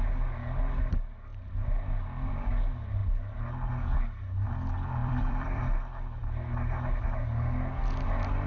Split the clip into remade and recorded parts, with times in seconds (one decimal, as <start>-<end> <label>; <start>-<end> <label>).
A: 0.0-5.0 recorded; 5.0-5.6 remade; 5.6-8.5 recorded